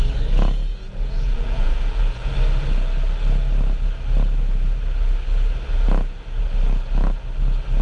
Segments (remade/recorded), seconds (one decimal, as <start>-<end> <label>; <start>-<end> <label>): 0.0-0.7 recorded; 0.7-2.3 remade; 2.3-7.8 recorded